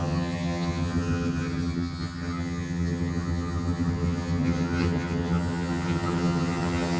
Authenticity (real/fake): fake